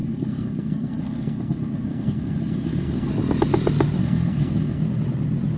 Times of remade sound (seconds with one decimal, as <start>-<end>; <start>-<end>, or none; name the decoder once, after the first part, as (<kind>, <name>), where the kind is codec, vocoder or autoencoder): 0.0-3.1 (codec, SNAC); 4.0-4.8